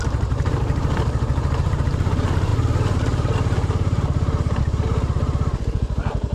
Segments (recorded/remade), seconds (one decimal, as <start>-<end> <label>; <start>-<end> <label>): 0.0-6.3 remade